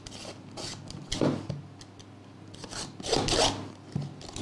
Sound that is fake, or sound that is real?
real